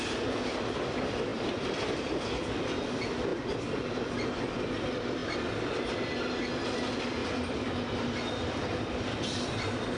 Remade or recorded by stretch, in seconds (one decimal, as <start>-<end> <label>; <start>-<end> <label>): 0.0-1.3 recorded; 1.3-2.2 remade; 2.2-7.2 recorded; 7.2-10.0 remade